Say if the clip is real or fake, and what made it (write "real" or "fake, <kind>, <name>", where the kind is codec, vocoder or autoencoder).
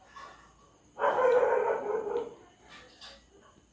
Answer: real